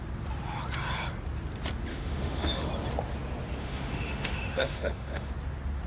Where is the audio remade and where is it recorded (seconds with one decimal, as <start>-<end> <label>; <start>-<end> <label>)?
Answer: 0.0-1.9 recorded; 1.9-2.7 remade; 2.7-3.6 recorded; 3.6-5.3 remade; 5.3-5.9 recorded